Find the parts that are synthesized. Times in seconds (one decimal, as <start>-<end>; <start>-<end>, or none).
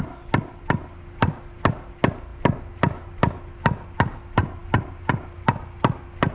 none